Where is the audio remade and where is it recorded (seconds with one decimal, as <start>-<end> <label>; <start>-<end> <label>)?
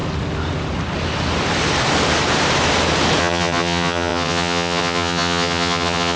0.0-3.2 recorded; 3.2-6.2 remade